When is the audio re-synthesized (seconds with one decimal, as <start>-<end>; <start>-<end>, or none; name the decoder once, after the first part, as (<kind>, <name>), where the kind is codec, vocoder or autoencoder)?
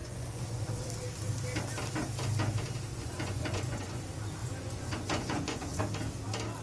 0.0-0.6 (vocoder, Vocos); 2.9-4.0; 4.4-5.8